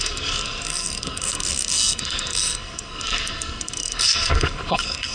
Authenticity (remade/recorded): remade